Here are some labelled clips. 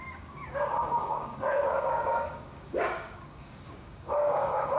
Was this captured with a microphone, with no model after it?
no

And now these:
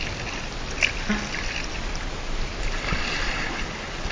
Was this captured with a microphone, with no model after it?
yes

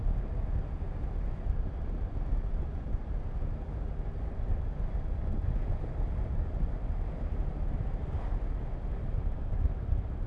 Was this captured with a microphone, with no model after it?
yes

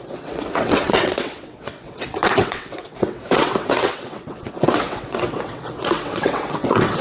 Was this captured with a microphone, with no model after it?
no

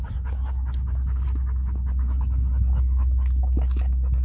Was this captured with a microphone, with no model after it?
yes